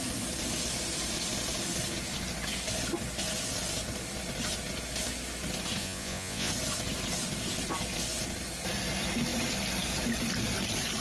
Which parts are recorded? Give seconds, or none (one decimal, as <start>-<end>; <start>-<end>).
0.0-5.8; 6.5-11.0